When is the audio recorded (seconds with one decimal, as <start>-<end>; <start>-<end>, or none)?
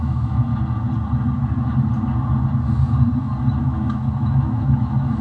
0.5-3.6